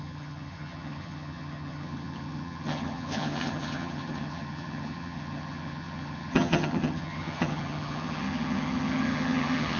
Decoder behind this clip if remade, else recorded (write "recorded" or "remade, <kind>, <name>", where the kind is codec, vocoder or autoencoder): remade, vocoder, HiFi-GAN